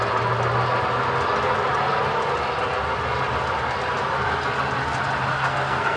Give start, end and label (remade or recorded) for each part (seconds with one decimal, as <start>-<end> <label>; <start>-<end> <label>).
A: 0.0-5.3 recorded; 5.3-6.0 remade